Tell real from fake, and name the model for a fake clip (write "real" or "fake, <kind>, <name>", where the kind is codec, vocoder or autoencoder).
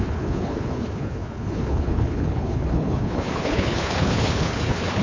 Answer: fake, codec, HILCodec